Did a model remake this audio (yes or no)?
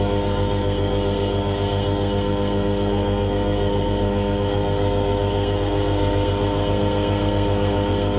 yes